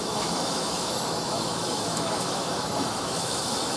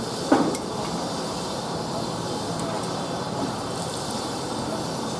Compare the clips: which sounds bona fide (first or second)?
second